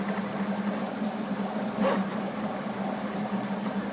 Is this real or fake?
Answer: real